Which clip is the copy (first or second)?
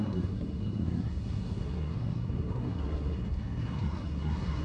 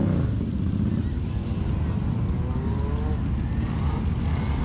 first